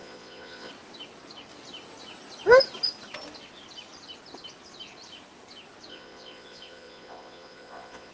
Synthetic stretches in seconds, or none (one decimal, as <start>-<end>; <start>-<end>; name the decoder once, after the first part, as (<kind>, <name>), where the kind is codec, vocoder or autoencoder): 0.0-0.7 (vocoder, Vocos); 5.9-8.1